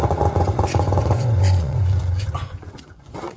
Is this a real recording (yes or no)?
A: no